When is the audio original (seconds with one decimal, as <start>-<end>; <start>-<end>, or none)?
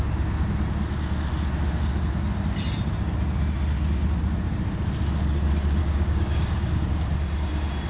0.0-5.8; 6.9-7.9